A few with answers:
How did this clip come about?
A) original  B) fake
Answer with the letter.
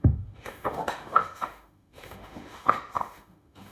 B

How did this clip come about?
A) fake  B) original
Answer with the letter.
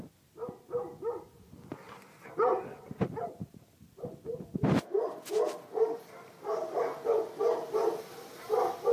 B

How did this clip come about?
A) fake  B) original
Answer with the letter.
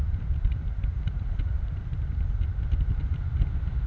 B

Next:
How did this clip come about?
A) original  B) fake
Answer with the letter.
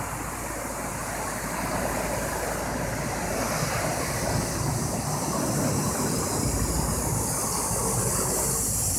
A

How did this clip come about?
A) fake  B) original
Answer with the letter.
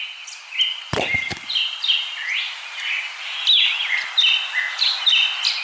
B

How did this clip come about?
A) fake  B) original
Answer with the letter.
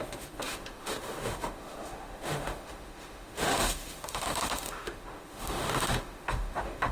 A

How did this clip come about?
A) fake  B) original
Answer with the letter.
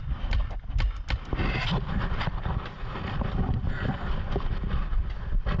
B